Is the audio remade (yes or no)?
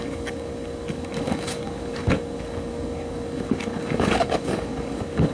yes